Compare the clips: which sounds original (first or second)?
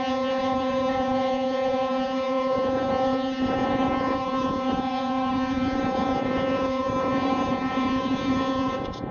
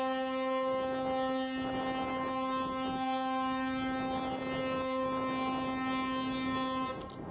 second